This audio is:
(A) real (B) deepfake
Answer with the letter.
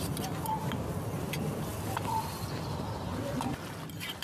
A